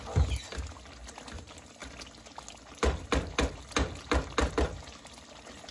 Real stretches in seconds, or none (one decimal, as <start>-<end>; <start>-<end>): 0.0-5.7